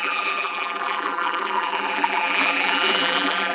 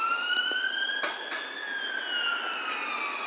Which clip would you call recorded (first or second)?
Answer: second